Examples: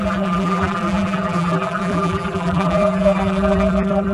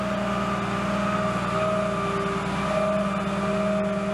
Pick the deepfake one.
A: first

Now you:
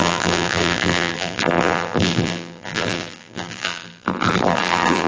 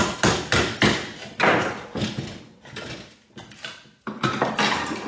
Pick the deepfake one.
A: first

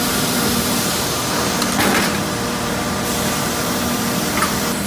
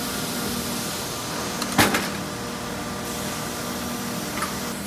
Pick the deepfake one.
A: first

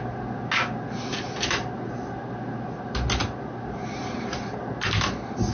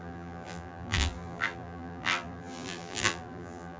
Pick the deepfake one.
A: second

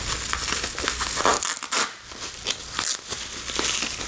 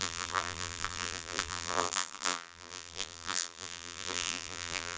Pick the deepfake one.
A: second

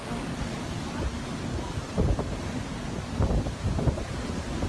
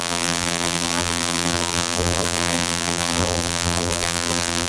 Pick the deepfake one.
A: second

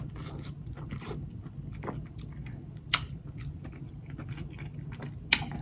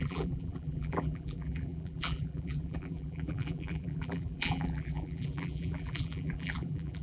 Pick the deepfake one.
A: second